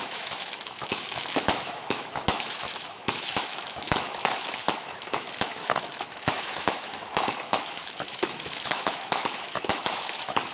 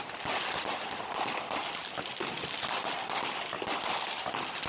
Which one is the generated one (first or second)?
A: first